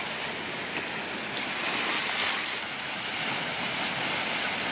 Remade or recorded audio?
recorded